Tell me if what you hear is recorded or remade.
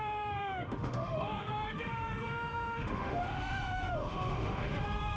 remade